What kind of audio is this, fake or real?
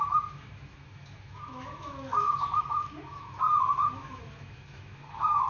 fake